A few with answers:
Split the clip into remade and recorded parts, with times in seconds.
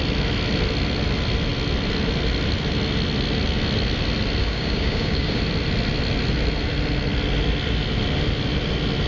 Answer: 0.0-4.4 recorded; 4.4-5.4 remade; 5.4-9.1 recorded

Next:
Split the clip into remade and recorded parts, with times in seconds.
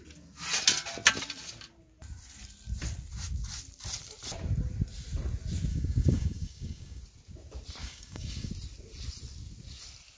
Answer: 0.0-5.7 recorded; 5.7-7.0 remade; 7.0-7.8 recorded; 7.8-8.5 remade; 8.5-10.2 recorded